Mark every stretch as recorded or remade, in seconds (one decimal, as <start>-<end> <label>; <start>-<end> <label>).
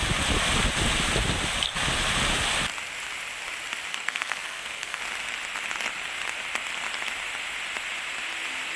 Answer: 0.0-3.9 recorded; 3.9-5.0 remade; 5.0-8.8 recorded